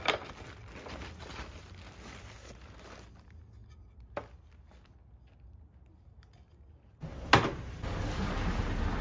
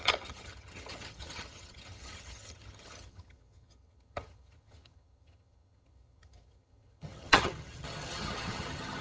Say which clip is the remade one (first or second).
second